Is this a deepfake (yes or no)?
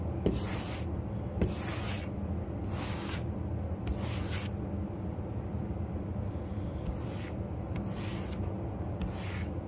no